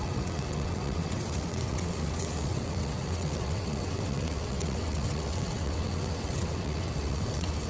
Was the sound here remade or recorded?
remade